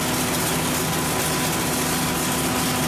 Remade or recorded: recorded